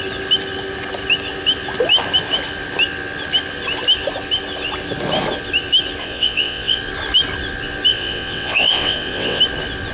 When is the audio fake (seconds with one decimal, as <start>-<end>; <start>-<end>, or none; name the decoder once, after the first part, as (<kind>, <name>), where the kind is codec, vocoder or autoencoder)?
6.0-6.8 (vocoder, WaveNeXt); 7.9-9.4